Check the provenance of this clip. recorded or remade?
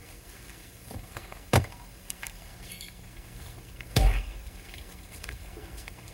remade